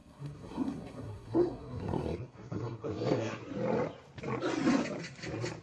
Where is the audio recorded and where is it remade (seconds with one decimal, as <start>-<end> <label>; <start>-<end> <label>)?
0.0-3.4 remade; 3.4-5.6 recorded